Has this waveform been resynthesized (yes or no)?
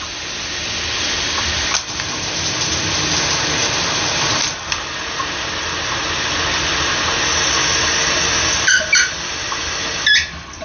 no